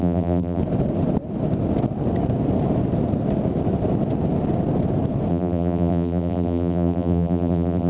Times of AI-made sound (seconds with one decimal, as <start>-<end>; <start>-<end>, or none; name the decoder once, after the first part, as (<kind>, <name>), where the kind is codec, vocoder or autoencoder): 0.0-0.6 (vocoder, BigVGAN v2); 5.3-7.9